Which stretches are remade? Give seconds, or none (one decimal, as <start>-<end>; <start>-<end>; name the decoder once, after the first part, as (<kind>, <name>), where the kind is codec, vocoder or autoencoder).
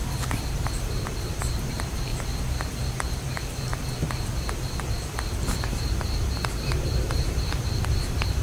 0.0-2.1 (vocoder, BigVGAN v2); 2.7-3.7; 5.5-8.4